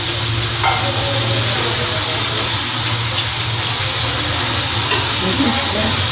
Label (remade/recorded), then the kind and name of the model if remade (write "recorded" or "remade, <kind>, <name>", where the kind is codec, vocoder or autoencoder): recorded